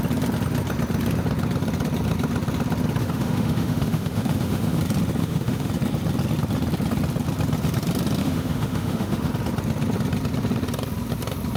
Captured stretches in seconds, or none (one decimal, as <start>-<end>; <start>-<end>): 0.0-3.0; 4.8-5.2; 5.7-8.2; 9.3-11.6